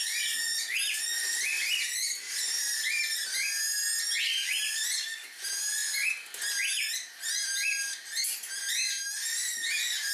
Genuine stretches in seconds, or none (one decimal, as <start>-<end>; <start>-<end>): 0.0-10.1